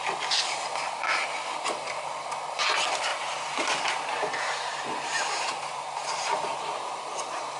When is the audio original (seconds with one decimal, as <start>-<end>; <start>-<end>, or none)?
0.0-3.1